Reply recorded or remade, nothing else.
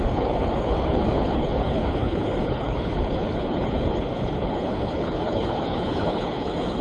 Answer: remade